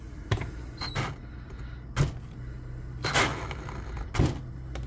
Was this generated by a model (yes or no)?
no